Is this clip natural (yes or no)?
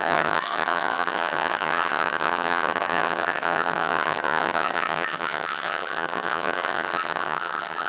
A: no